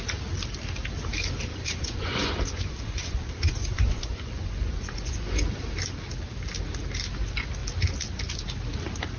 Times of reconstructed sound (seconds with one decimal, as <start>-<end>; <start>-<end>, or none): 1.5-5.5

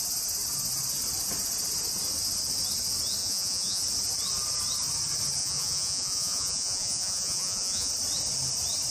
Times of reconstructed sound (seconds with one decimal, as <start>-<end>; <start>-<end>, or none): 3.2-3.8; 5.4-7.9